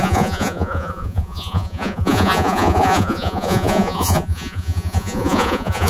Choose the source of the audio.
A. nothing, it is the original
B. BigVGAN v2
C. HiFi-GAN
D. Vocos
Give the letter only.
D